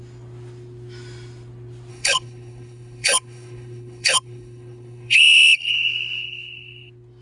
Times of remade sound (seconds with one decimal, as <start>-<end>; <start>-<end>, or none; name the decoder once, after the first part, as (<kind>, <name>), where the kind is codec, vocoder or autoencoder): 1.9-5.7 (codec, HILCodec)

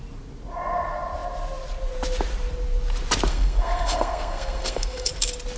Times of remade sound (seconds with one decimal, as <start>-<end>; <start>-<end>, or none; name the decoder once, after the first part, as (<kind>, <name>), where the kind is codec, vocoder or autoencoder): 3.3-5.1 (codec, SNAC)

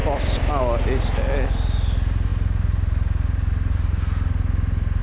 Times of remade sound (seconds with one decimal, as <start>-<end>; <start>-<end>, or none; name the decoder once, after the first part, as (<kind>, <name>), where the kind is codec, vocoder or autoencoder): 0.0-0.6 (vocoder, BigVGAN v2)

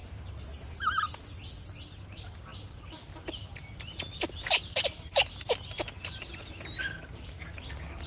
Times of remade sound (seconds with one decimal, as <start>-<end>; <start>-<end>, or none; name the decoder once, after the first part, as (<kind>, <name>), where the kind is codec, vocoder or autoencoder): 0.0-0.7 (vocoder, BigVGAN v2)

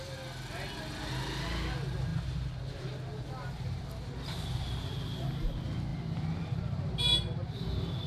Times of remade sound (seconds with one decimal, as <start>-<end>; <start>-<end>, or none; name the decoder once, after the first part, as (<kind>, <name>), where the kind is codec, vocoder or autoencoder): none

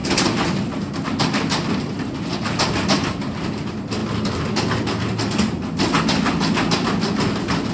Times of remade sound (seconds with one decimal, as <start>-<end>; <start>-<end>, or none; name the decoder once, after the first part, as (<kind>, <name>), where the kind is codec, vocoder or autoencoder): 1.2-2.3 (vocoder, BigVGAN v2); 3.0-4.0